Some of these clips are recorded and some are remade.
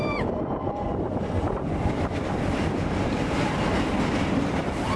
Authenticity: remade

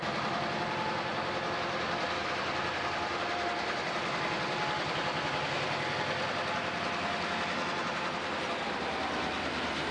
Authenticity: recorded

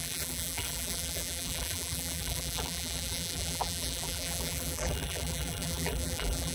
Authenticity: remade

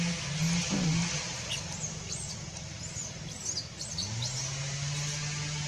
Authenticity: recorded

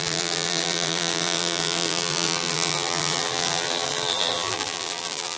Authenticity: remade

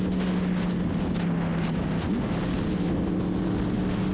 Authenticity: recorded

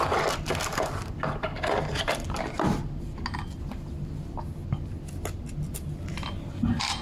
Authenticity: recorded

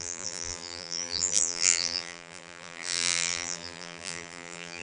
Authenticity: remade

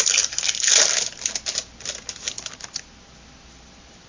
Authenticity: recorded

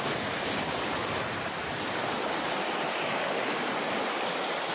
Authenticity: remade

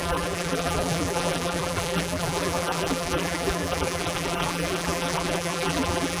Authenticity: remade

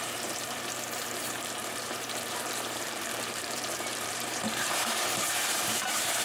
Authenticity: remade